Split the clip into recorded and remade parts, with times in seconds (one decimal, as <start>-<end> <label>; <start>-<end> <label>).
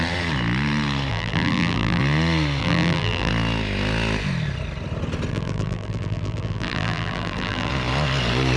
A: 0.0-1.1 recorded; 1.1-2.0 remade; 2.0-2.6 recorded; 2.6-3.3 remade; 3.3-5.3 recorded; 5.3-7.7 remade; 7.7-8.6 recorded